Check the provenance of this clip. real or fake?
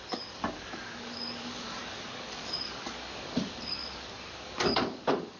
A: fake